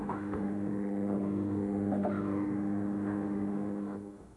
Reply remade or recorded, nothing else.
remade